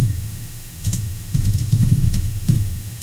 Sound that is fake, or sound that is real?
fake